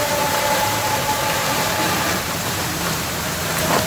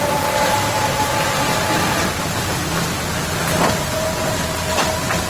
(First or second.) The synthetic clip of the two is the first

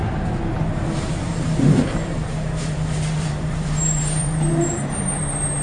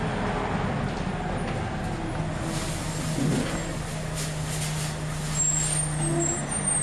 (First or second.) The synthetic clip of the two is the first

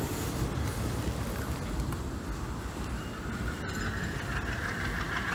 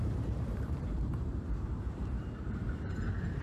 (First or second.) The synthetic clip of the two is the second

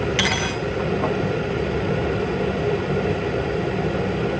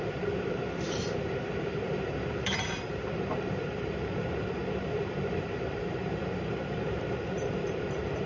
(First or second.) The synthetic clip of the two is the second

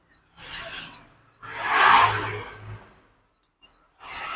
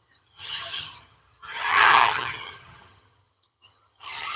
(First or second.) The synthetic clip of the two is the second